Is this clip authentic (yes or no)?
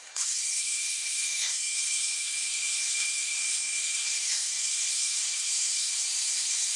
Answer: no